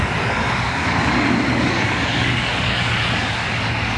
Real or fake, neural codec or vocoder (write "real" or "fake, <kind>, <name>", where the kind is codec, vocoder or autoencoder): fake, codec, DAC